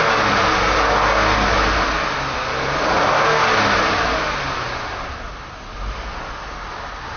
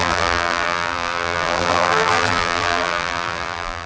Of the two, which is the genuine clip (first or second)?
first